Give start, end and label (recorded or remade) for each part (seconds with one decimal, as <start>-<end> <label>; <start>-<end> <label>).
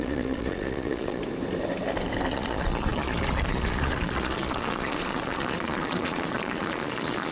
0.0-1.2 remade; 1.2-2.3 recorded; 2.3-7.3 remade